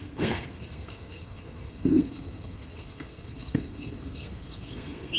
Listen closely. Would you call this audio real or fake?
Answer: fake